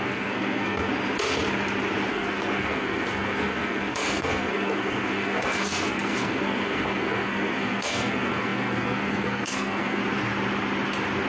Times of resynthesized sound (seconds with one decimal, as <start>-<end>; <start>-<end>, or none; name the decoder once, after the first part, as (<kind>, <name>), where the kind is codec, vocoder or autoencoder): 0.0-0.9 (codec, SNAC); 2.1-10.0